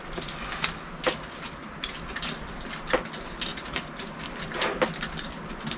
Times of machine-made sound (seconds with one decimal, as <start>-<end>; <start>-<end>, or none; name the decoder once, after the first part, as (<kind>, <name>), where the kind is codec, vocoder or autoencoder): none